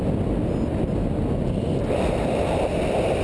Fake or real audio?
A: real